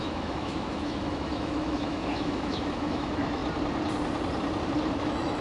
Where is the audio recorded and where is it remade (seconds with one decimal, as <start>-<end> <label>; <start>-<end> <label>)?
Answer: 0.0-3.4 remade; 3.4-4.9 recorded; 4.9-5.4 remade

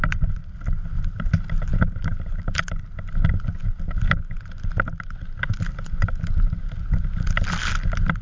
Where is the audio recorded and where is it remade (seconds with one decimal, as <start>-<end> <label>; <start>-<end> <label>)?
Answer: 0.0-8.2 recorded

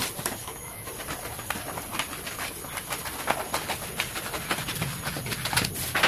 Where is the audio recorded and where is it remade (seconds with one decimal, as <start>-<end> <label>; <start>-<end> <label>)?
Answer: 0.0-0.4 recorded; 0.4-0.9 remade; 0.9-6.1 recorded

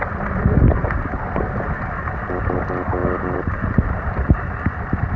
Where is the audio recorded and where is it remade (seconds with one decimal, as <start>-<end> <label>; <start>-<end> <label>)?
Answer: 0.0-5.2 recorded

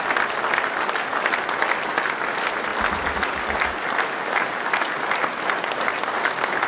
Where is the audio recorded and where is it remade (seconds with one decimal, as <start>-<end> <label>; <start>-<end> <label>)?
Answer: 0.0-6.7 recorded

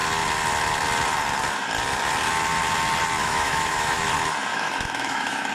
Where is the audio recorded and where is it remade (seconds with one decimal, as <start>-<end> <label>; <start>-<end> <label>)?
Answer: 0.0-3.2 recorded; 3.2-4.0 remade; 4.0-4.5 recorded; 4.5-5.5 remade